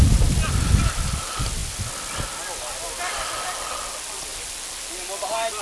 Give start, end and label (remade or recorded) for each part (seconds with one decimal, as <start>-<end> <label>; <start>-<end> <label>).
0.0-5.6 recorded